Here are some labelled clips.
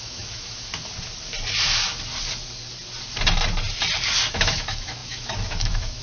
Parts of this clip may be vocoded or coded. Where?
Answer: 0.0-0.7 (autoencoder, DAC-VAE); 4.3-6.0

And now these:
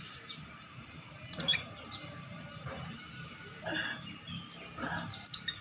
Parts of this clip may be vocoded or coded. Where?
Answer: 0.0-3.8 (vocoder, BigVGAN v2); 5.1-5.6